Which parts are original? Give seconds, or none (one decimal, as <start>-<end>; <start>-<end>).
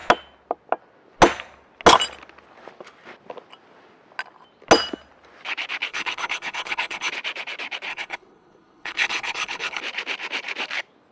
0.0-5.9; 7.1-7.9; 9.8-11.1